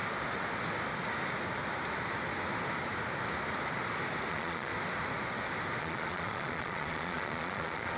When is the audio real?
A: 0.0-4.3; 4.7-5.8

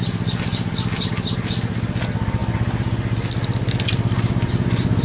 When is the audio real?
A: 0.0-5.0

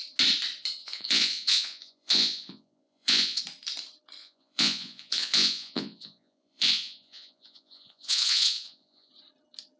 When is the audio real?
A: 0.0-0.8; 3.4-4.2; 9.1-9.8